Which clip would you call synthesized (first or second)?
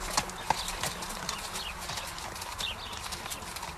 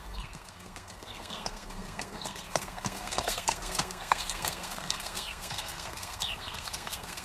second